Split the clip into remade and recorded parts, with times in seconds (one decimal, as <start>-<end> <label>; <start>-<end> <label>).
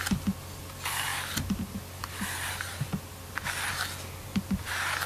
0.0-5.1 recorded